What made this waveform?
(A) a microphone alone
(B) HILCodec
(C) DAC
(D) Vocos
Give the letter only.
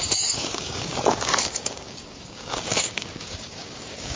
C